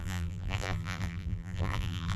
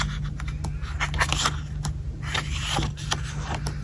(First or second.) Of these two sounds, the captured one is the second